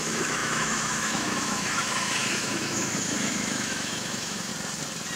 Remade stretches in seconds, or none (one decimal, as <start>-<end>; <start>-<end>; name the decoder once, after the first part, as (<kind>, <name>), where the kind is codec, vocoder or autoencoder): 0.0-4.5 (autoencoder, DAC-VAE)